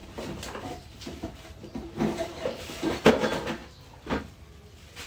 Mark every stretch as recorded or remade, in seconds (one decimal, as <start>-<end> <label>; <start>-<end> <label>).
0.0-3.1 remade; 3.1-5.1 recorded

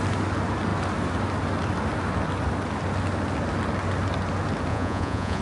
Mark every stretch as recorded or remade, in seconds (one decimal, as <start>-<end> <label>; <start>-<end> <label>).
0.0-4.7 recorded; 4.7-5.4 remade